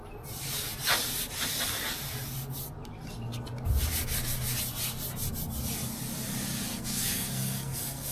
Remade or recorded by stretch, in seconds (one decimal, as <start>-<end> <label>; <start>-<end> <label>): 0.0-6.7 recorded; 6.7-8.1 remade